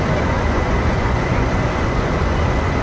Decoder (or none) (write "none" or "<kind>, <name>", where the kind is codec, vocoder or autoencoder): vocoder, Vocos